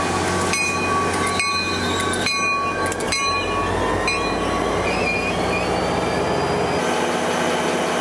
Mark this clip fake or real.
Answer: real